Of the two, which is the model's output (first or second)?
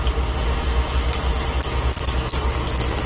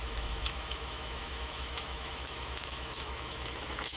second